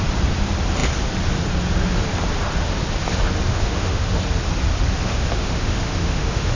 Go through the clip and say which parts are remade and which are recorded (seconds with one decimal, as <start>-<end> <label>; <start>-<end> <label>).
0.0-3.5 recorded; 3.5-4.2 remade; 4.2-5.0 recorded; 5.0-6.5 remade